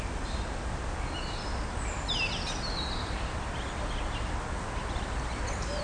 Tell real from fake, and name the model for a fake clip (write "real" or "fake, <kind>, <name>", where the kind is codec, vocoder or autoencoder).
real